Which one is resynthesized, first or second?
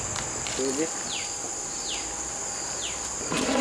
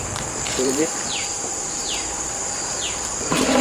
second